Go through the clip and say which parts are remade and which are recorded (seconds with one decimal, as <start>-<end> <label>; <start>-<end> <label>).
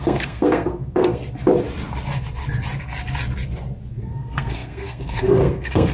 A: 0.0-1.2 remade; 1.2-3.9 recorded; 3.9-5.9 remade